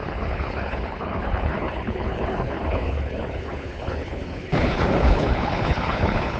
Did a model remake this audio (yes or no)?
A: yes